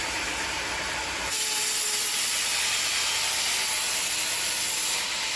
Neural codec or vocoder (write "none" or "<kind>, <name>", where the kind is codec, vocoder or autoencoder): none